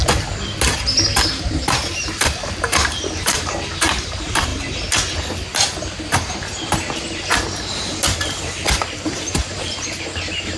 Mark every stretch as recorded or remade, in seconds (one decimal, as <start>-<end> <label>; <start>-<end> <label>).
0.0-1.3 recorded; 1.3-4.5 remade; 4.5-8.8 recorded; 8.8-10.6 remade